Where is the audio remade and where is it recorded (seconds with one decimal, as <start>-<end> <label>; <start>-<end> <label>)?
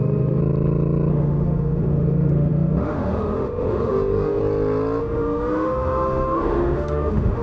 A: 0.0-0.4 remade; 0.4-1.1 recorded; 1.1-4.4 remade; 4.4-5.0 recorded; 5.0-7.4 remade